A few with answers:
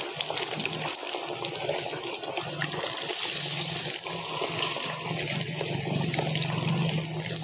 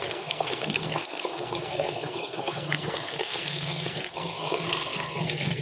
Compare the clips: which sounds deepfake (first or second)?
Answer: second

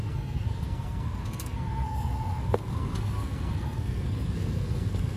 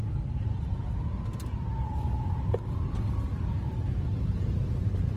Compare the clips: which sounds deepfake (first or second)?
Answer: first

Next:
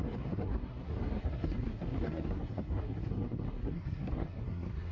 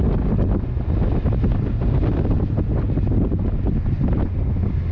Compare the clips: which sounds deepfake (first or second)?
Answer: first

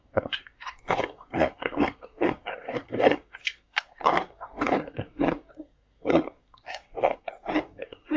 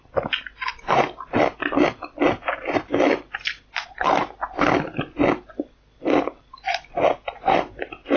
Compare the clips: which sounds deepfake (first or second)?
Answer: first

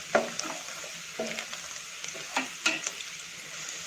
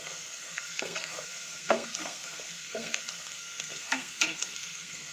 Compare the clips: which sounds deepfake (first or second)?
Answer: second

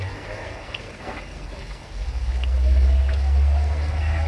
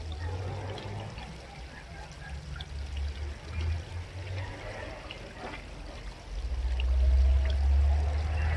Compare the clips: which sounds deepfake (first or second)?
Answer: first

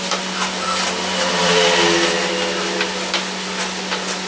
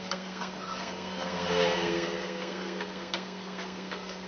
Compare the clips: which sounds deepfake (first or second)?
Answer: second